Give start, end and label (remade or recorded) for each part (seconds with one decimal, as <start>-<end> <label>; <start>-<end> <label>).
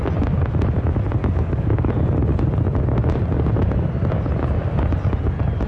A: 0.0-1.2 recorded; 1.2-1.9 remade; 1.9-5.7 recorded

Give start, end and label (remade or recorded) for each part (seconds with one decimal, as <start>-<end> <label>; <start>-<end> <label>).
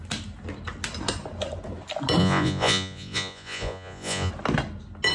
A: 0.0-2.2 recorded; 2.2-4.3 remade; 4.3-5.1 recorded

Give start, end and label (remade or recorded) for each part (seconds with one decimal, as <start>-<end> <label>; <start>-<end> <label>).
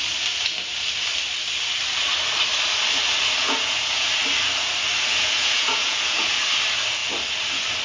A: 0.0-3.4 recorded; 3.4-4.1 remade; 4.1-5.1 recorded; 5.1-6.4 remade; 6.4-7.8 recorded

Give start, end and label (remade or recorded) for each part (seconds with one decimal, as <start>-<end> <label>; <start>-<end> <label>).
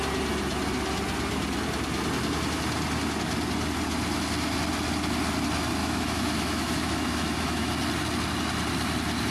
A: 0.0-5.8 recorded; 5.8-7.7 remade; 7.7-9.3 recorded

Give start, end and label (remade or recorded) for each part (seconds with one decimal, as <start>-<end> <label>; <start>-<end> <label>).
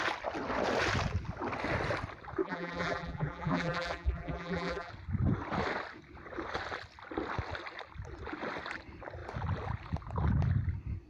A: 0.0-2.4 recorded; 2.4-4.9 remade; 4.9-11.1 recorded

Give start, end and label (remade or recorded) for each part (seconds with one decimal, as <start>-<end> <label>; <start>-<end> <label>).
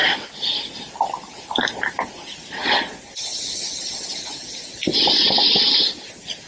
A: 0.0-1.6 remade; 1.6-6.5 recorded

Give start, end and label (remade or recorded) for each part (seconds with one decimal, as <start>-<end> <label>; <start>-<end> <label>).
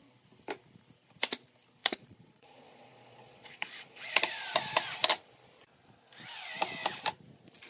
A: 0.0-1.8 recorded; 1.8-4.2 remade; 4.2-7.7 recorded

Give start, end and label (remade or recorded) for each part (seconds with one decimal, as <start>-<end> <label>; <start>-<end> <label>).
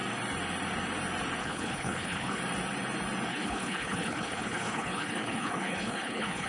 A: 0.0-1.4 recorded; 1.4-2.4 remade; 2.4-3.3 recorded; 3.3-6.5 remade